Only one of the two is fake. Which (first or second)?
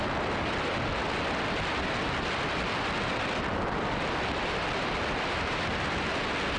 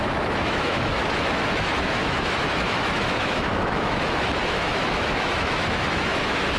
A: second